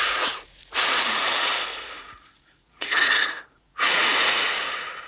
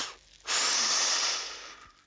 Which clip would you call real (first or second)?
second